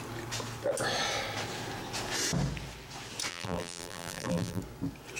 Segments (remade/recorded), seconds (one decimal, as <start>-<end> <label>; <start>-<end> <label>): 0.0-3.3 recorded; 3.3-4.6 remade; 4.6-5.2 recorded